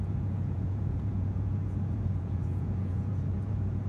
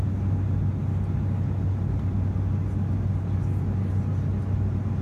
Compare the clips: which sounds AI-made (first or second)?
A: first